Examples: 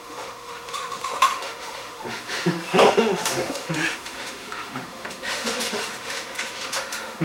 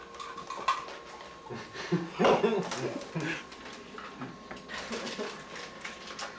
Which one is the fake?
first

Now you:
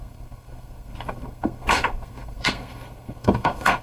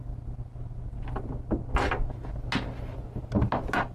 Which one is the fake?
first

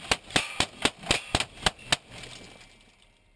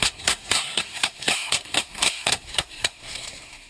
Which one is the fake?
second